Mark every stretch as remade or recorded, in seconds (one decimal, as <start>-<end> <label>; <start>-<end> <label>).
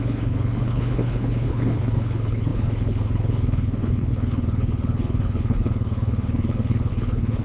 0.0-7.4 remade